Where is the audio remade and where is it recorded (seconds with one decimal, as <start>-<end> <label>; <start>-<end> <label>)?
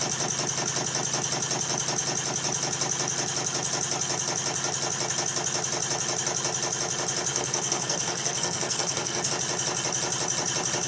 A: 0.0-7.3 recorded; 7.3-9.3 remade; 9.3-10.9 recorded